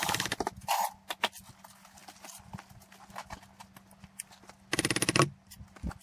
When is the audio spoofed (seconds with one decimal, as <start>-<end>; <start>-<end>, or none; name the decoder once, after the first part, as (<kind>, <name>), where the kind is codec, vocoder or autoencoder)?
none